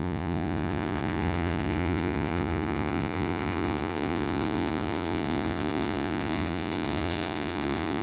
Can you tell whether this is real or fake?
fake